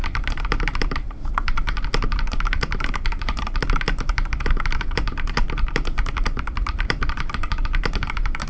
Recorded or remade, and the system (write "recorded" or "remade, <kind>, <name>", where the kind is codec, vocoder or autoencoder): remade, vocoder, BigVGAN v2